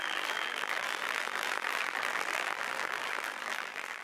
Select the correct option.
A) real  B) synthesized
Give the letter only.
B